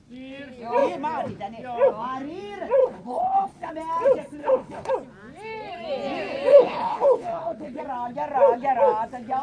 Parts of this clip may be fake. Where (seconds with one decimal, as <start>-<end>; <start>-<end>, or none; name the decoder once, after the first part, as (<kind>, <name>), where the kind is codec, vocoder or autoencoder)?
2.8-3.7 (codec, HILCodec); 4.4-4.9; 6.5-7.8